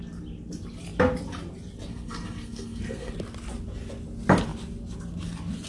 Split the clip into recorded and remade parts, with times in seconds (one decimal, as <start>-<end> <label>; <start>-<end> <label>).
0.0-1.9 recorded; 1.9-3.1 remade; 3.1-5.7 recorded